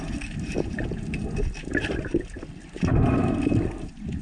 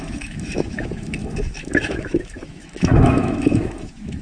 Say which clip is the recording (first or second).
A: first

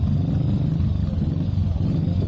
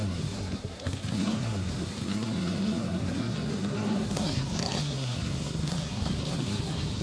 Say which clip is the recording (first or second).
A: first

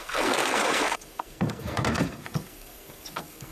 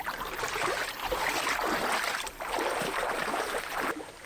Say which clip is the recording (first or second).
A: second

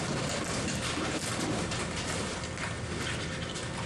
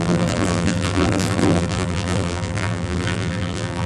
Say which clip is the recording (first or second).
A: first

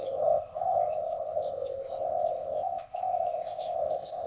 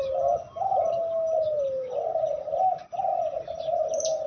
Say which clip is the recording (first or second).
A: second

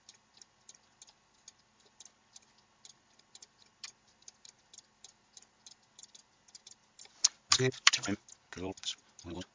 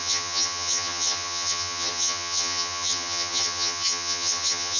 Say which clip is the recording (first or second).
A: first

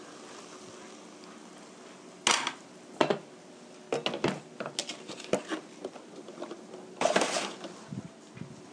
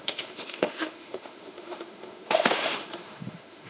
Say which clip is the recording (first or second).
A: first